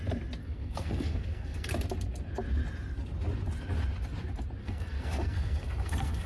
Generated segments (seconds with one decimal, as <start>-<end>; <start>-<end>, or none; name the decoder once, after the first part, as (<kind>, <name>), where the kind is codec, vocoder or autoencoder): 0.4-1.7 (codec, SNAC); 4.6-6.3